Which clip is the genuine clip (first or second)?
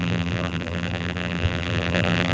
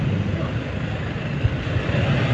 second